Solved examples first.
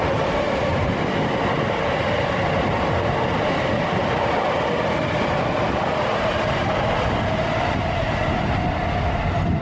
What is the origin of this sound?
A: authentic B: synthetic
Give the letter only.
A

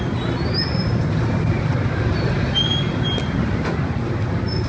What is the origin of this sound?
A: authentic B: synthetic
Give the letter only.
A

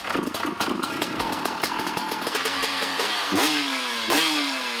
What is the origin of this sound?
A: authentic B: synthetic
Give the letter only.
B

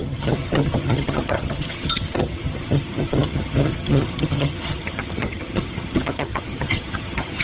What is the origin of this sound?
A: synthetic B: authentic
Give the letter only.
A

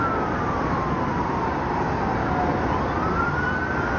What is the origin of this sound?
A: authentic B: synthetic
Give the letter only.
A